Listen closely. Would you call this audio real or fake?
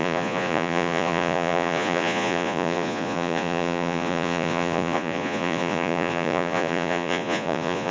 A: fake